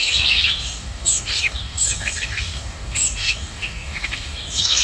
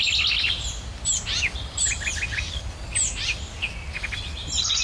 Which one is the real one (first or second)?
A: second